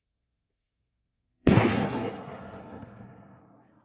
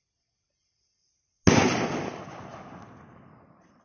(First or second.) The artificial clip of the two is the first